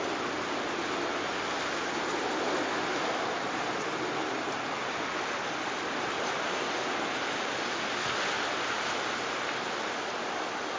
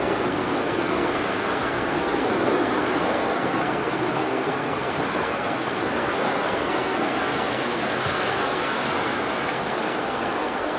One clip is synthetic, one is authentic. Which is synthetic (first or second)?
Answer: second